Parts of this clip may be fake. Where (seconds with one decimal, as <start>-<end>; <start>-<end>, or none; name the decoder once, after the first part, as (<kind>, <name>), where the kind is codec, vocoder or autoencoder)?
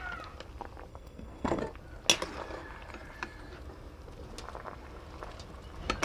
0.9-1.6 (codec, SNAC)